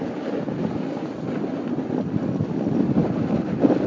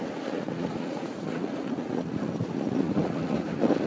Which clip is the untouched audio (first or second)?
first